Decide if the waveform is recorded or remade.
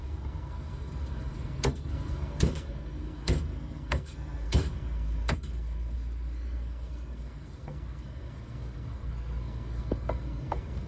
remade